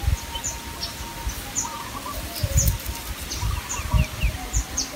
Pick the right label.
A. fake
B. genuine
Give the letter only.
B